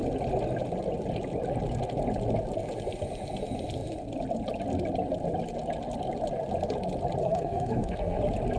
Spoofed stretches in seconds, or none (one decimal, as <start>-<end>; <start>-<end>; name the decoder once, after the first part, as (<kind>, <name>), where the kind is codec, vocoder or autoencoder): 7.2-8.2 (codec, SNAC)